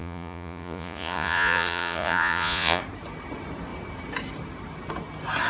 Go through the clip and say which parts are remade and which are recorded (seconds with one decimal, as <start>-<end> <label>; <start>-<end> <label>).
0.0-2.8 remade; 2.8-5.5 recorded